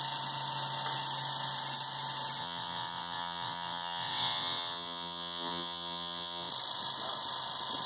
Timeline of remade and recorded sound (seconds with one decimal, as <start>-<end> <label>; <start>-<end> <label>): 0.0-2.4 recorded; 2.4-6.5 remade; 6.5-7.9 recorded